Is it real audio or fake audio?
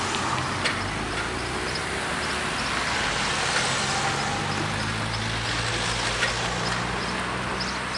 real